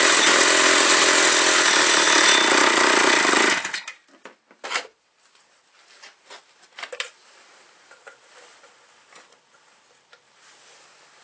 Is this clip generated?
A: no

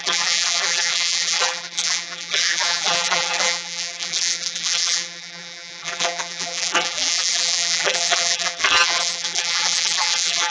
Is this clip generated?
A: yes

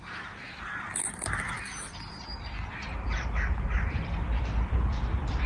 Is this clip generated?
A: yes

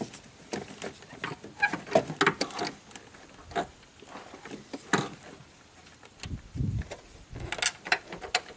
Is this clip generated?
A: no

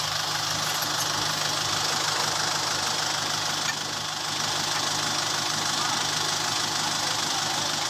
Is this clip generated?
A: no